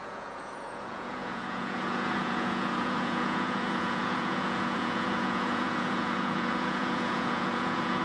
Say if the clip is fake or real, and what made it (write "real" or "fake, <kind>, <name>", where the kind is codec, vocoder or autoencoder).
fake, vocoder, Vocos